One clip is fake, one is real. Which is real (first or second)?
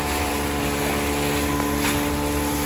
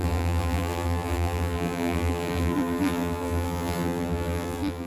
first